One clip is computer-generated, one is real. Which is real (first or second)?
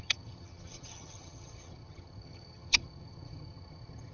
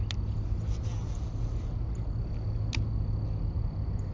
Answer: second